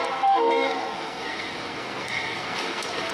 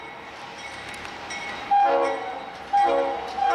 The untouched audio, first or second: second